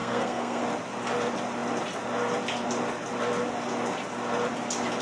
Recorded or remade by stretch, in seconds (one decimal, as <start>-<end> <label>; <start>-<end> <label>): 0.0-0.6 remade; 0.6-5.0 recorded